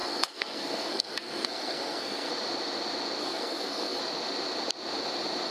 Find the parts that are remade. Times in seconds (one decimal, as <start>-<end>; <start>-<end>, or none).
0.0-2.3; 3.2-4.0